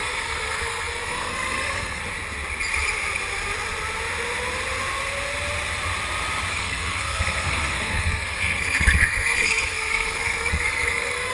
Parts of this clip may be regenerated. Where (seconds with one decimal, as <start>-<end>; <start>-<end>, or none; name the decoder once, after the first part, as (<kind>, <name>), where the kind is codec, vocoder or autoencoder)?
0.0-2.0 (codec, SNAC); 6.5-11.3